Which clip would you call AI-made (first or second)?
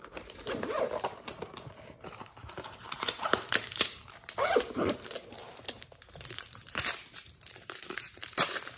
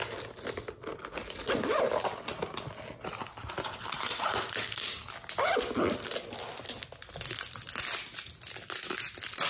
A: first